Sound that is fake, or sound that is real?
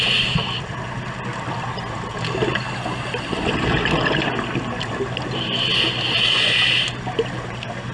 real